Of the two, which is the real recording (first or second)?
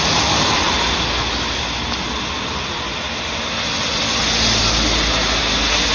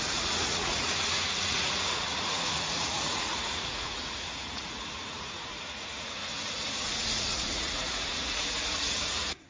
first